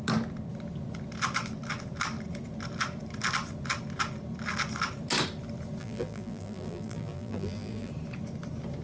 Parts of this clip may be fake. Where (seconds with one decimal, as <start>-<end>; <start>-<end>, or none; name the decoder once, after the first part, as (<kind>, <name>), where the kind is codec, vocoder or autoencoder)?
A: 5.8-7.9 (vocoder, BigVGAN v2)